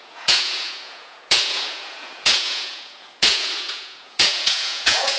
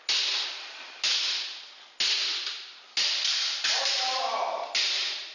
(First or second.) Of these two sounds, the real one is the second